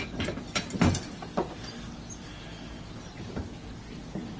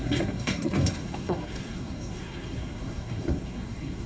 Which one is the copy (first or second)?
second